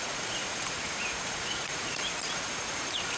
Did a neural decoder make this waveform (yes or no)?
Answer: yes